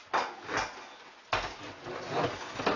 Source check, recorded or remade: recorded